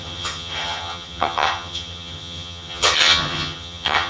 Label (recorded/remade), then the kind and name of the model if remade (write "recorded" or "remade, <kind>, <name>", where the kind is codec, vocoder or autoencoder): remade, vocoder, HiFi-GAN